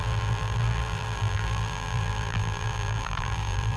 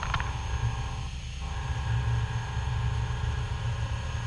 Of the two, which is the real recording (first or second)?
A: second